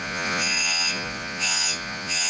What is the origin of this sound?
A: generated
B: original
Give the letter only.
A